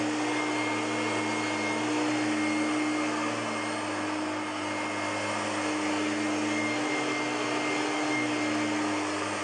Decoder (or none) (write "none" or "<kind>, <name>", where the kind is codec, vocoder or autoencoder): none